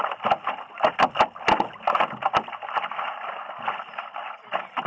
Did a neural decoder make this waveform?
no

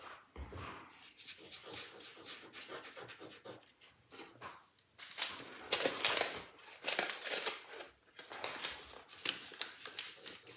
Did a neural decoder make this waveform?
no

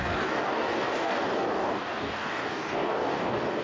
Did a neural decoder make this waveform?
yes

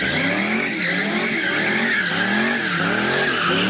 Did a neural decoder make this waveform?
no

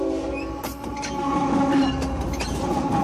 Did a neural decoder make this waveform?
no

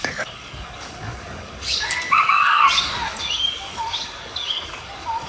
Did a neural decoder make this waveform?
yes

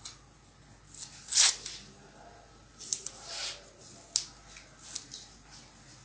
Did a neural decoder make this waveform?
no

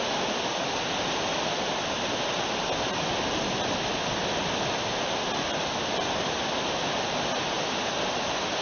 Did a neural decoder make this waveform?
no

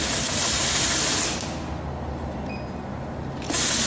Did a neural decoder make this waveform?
no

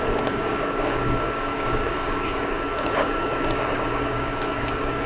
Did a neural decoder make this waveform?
yes